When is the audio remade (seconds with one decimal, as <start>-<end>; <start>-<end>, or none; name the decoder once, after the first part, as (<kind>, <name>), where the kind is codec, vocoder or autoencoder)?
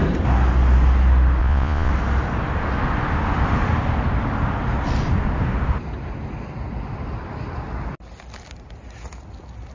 1.4-1.9 (vocoder, Vocos)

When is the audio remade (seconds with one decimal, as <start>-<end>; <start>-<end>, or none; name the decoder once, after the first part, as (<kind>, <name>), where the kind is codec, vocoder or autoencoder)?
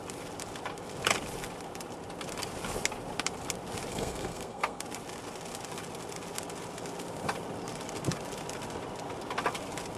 3.9-4.8 (codec, SNAC)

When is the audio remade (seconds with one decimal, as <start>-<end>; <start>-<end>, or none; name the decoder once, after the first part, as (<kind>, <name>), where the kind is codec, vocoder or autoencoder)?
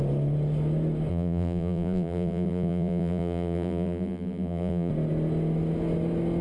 1.1-4.9 (vocoder, BigVGAN v2)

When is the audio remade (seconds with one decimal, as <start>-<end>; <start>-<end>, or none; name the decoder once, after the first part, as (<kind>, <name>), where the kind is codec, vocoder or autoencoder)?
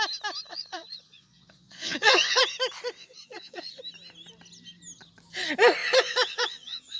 0.5-2.4 (vocoder, Vocos); 3.0-3.8; 5.8-7.0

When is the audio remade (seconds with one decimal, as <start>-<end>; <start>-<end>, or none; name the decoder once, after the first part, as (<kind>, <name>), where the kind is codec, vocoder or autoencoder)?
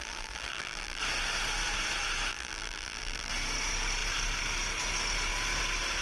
0.0-1.0 (vocoder, BigVGAN v2); 2.3-3.3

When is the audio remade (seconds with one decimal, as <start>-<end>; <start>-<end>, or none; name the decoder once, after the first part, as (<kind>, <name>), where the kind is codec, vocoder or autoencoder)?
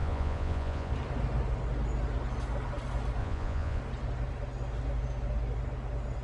0.0-0.9 (vocoder, Vocos); 3.2-3.8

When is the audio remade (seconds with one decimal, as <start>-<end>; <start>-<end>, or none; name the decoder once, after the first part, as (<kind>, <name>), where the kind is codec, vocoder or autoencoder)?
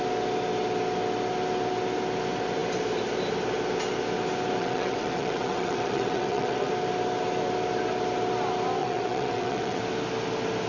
4.6-6.7 (vocoder, WaveNeXt); 8.8-9.8